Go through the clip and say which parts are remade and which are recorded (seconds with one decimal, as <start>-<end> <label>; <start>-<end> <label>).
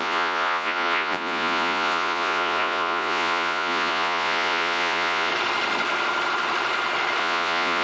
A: 0.0-5.3 remade; 5.3-7.2 recorded; 7.2-7.8 remade